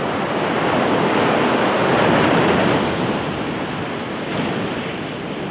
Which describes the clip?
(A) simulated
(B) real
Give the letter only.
B